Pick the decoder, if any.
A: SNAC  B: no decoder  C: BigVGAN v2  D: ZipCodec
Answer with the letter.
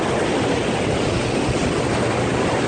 B